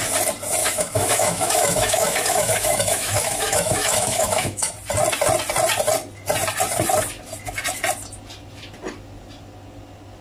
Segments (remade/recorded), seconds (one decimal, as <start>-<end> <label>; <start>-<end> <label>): 0.0-0.6 recorded; 0.6-4.7 remade; 4.7-10.2 recorded